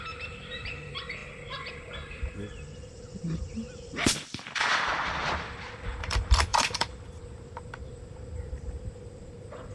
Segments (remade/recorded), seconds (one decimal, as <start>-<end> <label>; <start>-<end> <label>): 0.0-9.7 remade